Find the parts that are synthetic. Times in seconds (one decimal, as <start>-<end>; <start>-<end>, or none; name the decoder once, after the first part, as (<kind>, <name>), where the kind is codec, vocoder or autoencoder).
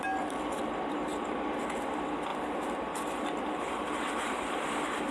1.1-1.6 (vocoder, BigVGAN v2); 2.3-3.6